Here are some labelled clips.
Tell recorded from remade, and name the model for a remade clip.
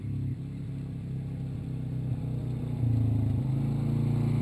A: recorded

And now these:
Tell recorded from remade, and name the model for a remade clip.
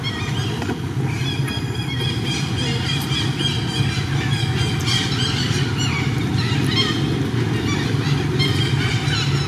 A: recorded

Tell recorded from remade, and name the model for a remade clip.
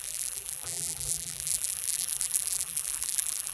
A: remade, vocoder, BigVGAN v2